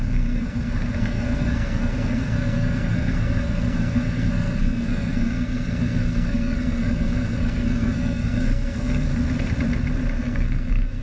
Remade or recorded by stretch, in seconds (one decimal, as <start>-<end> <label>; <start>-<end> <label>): 0.0-9.1 remade; 9.1-10.1 recorded; 10.1-11.0 remade

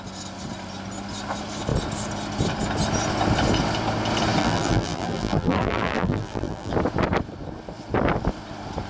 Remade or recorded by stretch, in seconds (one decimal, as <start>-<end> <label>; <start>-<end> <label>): 0.0-4.4 recorded; 4.4-6.7 remade; 6.7-8.9 recorded

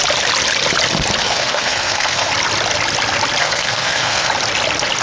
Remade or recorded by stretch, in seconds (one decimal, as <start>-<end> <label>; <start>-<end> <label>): 0.0-1.2 recorded; 1.2-2.3 remade; 2.3-3.4 recorded; 3.4-4.3 remade; 4.3-5.0 recorded

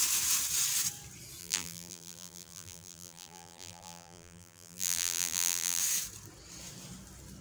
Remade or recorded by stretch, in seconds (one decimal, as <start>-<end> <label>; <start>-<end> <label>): 0.0-1.4 recorded; 1.4-5.8 remade; 5.8-7.4 recorded

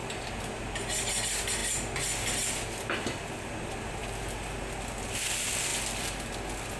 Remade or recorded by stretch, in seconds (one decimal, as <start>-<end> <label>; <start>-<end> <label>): 0.0-6.8 recorded